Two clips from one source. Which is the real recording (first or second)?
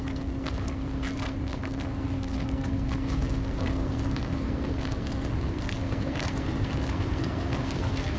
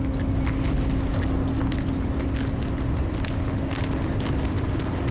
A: second